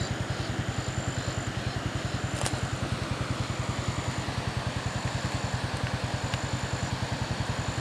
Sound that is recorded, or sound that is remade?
recorded